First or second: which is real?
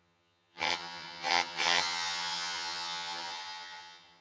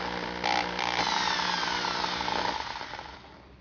second